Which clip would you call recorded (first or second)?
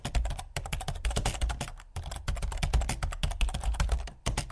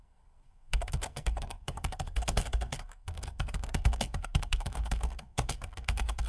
first